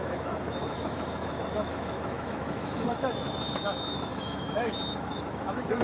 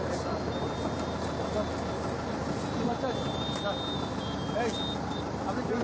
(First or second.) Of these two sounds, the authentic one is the second